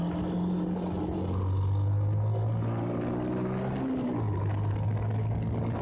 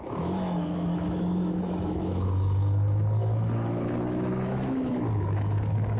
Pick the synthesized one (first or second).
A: second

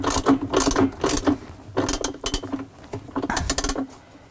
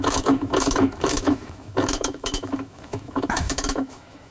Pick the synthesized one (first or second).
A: second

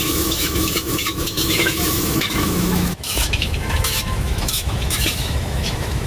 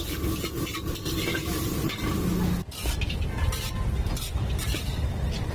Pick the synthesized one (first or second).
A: first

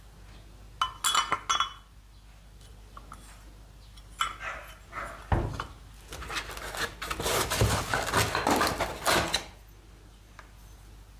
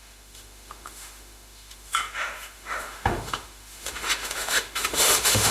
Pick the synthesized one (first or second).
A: second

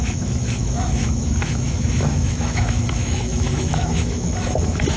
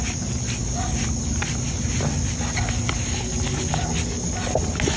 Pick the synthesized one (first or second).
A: first